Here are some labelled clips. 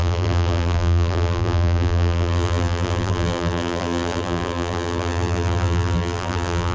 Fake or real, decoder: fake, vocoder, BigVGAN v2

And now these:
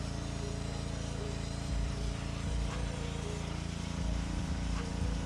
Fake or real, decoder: fake, vocoder, BigVGAN v2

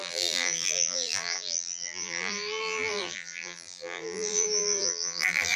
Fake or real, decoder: fake, vocoder, BigVGAN v2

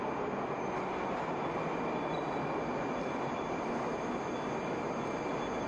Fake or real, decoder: real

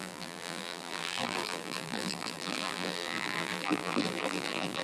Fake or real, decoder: fake, vocoder, BigVGAN v2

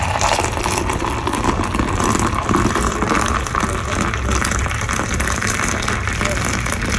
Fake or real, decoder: fake, vocoder, BigVGAN v2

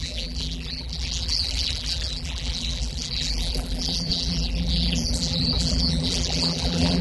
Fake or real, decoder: fake, vocoder, BigVGAN v2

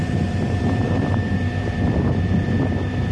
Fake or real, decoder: fake, vocoder, BigVGAN v2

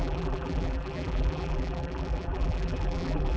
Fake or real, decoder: fake, vocoder, BigVGAN v2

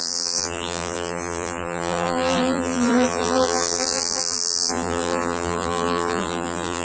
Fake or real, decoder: fake, vocoder, BigVGAN v2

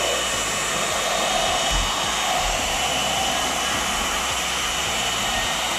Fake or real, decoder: real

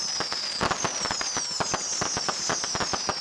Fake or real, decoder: real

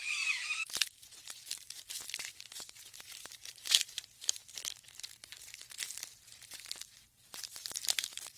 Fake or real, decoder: fake, vocoder, BigVGAN v2